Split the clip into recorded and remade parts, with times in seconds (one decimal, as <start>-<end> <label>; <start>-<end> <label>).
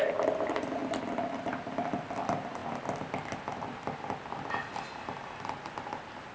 0.0-6.3 recorded